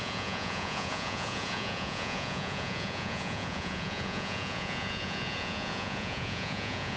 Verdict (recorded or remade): remade